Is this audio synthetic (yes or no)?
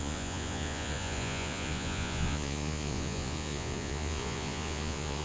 yes